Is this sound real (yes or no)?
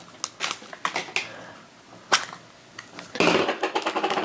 yes